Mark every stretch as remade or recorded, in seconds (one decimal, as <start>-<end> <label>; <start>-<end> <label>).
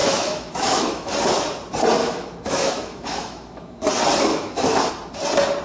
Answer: 0.0-1.1 remade; 1.1-2.0 recorded; 2.0-3.9 remade; 3.9-4.3 recorded; 4.3-4.9 remade; 4.9-5.6 recorded